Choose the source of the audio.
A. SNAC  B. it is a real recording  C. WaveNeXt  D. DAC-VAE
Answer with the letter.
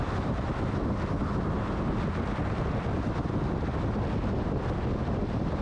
B